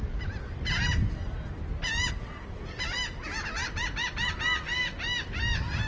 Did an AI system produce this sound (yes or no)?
no